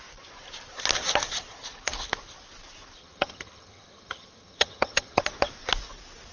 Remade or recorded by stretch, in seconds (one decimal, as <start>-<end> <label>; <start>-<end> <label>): 0.0-3.0 recorded; 3.0-5.2 remade; 5.2-6.3 recorded